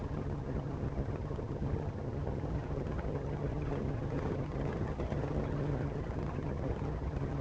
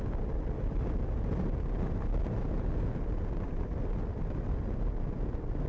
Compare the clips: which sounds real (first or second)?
second